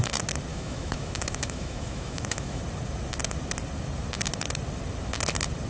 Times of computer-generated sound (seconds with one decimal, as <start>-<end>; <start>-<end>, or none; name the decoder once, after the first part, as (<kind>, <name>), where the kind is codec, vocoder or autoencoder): 0.5-2.6 (autoencoder, DAC-VAE)